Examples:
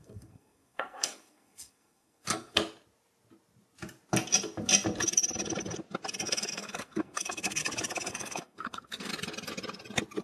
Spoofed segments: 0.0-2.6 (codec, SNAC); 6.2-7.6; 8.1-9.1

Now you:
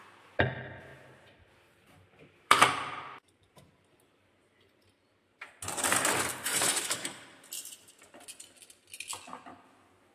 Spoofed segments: 0.9-5.5 (vocoder, BigVGAN v2); 6.5-8.0

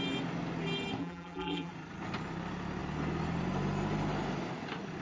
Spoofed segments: 1.0-1.7 (vocoder, BigVGAN v2)